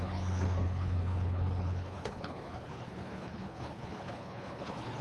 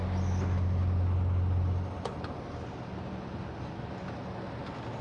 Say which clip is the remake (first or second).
first